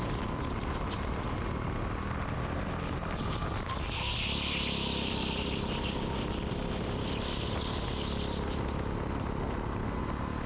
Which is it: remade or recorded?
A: recorded